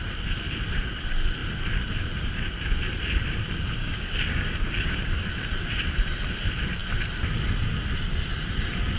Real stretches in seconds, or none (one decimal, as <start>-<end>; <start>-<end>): 0.0-3.8; 5.3-9.0